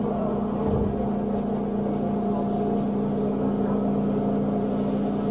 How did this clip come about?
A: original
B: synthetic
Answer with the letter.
A